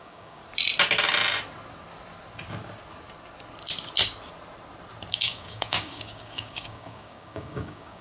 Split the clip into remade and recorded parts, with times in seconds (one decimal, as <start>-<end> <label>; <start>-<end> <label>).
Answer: 0.0-0.4 remade; 0.4-5.1 recorded; 5.1-8.0 remade